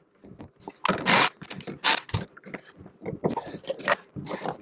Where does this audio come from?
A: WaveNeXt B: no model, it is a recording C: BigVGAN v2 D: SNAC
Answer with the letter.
B